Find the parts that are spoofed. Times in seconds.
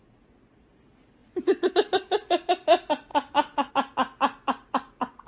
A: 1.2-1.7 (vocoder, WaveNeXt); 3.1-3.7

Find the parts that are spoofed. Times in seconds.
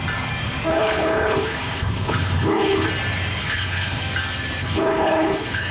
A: 0.7-2.9 (codec, HILCodec); 3.4-4.0; 4.6-5.7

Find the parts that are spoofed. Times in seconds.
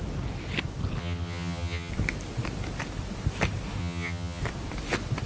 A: 1.0-1.9 (vocoder, HiFi-GAN); 3.8-4.4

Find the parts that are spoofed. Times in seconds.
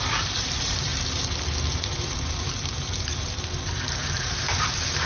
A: 0.0-0.9 (vocoder, BigVGAN v2); 1.7-5.1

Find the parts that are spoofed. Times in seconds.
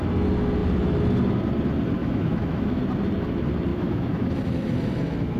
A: 2.0-2.8 (autoencoder, DAC-VAE); 3.7-4.3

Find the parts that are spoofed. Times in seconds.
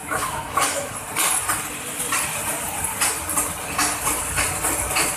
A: 0.0-0.9 (autoencoder, DAC-VAE)